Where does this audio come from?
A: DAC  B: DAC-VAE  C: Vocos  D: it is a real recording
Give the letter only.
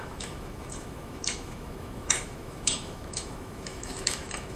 B